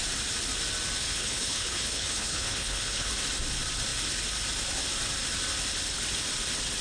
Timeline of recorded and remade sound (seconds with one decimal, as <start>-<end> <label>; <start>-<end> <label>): 0.0-1.0 recorded; 1.0-3.1 remade; 3.1-6.8 recorded